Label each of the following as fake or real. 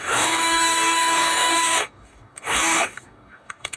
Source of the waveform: fake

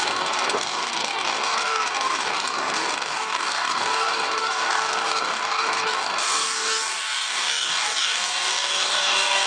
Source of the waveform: fake